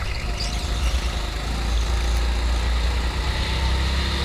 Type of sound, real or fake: real